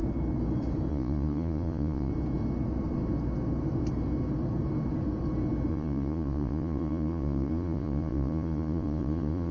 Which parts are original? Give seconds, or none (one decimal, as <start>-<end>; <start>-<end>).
0.0-0.9; 2.1-5.7